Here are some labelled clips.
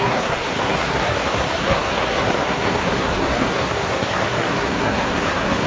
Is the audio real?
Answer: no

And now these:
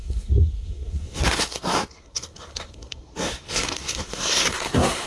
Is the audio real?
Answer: no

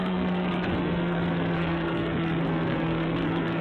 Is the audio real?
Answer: no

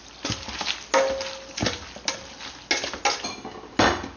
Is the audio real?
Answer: yes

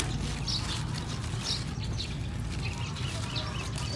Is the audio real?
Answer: yes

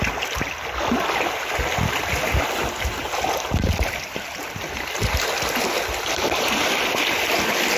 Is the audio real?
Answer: yes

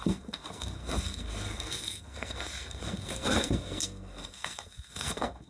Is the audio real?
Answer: no